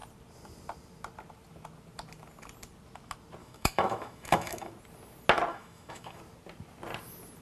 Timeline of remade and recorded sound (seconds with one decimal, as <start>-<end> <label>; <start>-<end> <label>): 0.0-3.4 recorded; 3.4-4.7 remade; 4.7-5.5 recorded; 5.5-6.2 remade; 6.2-7.4 recorded